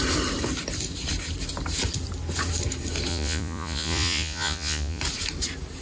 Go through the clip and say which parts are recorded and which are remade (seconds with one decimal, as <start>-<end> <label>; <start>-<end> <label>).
0.0-3.1 recorded; 3.1-5.0 remade; 5.0-5.8 recorded